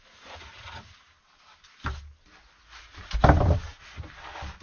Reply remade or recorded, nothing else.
recorded